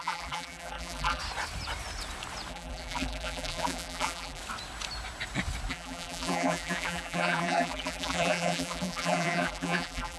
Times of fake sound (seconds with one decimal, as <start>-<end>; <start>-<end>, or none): 0.0-1.2; 2.5-4.4; 5.7-10.2